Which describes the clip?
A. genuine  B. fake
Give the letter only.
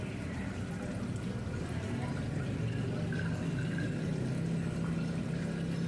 A